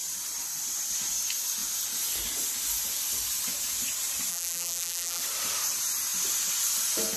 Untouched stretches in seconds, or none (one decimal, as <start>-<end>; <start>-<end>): 0.0-4.3; 5.2-7.2